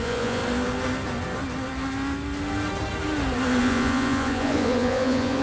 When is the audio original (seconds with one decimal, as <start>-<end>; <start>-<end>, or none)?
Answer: 0.4-3.6